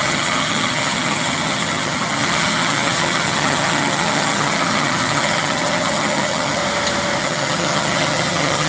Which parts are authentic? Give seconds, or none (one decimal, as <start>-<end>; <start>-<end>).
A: 6.6-7.2